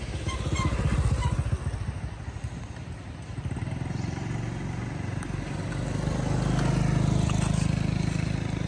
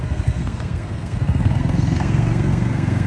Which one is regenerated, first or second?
second